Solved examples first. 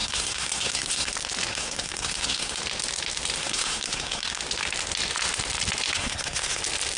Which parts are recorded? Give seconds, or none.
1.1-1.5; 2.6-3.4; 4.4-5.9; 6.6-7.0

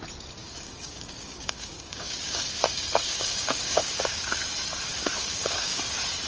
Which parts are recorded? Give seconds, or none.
0.0-0.4; 4.2-4.9; 5.8-6.3

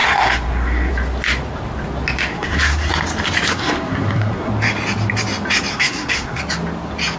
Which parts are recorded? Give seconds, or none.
0.9-2.3; 2.9-3.5; 4.5-5.7; 6.4-7.2

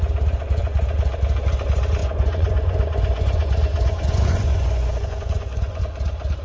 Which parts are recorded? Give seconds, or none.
0.0-2.0; 5.8-6.4

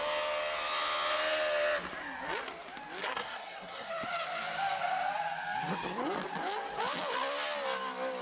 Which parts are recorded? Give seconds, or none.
0.0-3.0; 3.9-8.2

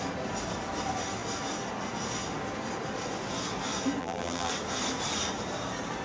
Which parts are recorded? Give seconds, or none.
0.0-4.0; 4.5-6.0

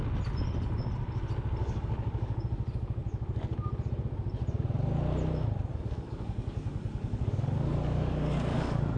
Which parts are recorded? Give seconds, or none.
0.0-1.6; 2.4-5.7

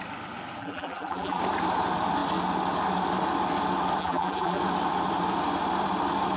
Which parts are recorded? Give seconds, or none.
0.0-0.6; 1.4-4.0; 4.6-6.4